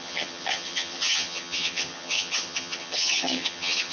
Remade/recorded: remade